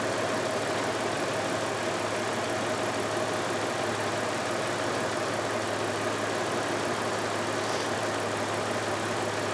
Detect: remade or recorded recorded